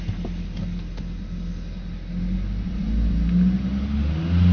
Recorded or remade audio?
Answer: recorded